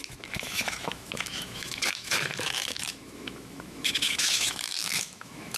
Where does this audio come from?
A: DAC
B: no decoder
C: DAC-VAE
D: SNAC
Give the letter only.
C